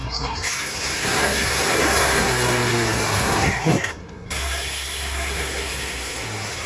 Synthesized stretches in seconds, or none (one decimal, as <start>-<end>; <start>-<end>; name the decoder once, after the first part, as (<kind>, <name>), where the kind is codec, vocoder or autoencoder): 0.0-6.7 (codec, SNAC)